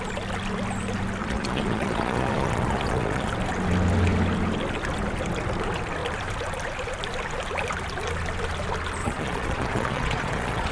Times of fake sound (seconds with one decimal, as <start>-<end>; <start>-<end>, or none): 1.2-3.3; 9.0-10.7